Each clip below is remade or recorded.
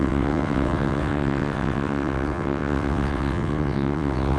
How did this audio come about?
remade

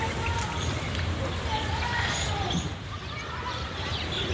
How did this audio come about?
recorded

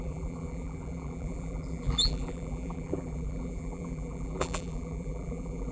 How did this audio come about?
remade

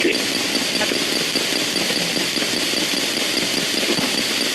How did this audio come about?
recorded